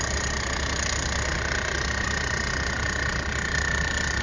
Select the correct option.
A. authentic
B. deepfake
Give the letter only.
A